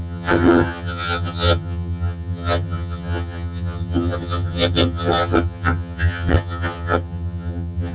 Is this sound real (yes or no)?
no